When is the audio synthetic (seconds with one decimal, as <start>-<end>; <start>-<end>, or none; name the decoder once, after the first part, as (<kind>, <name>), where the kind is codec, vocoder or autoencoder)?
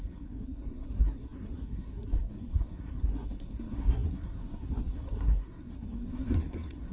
0.0-6.9 (codec, SNAC)